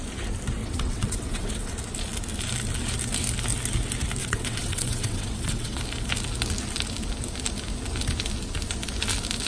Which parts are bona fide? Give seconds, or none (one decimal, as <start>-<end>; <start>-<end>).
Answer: 0.0-0.6; 1.7-4.2; 5.8-9.5